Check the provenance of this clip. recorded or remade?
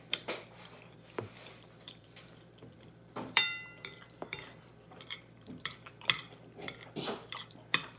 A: remade